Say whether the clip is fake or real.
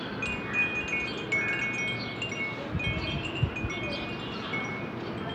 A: real